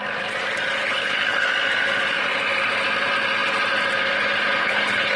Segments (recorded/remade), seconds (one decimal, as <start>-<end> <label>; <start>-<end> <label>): 0.0-0.8 recorded; 0.8-1.5 remade; 1.5-4.6 recorded; 4.6-5.2 remade